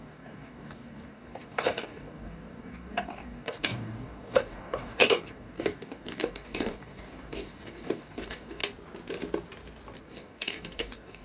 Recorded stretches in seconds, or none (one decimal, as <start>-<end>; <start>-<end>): 8.6-10.0